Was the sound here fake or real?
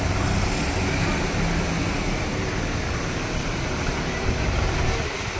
real